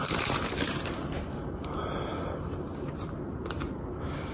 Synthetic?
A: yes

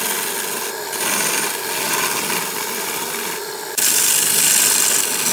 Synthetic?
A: no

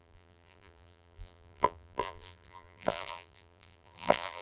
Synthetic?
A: yes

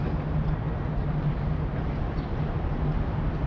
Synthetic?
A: no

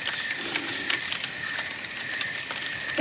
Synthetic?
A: no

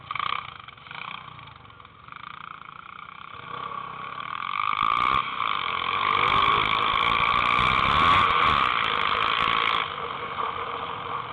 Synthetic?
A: yes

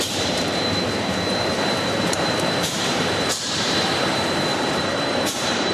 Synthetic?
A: yes